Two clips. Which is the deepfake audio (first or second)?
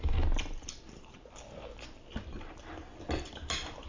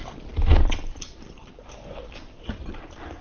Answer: second